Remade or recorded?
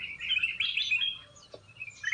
remade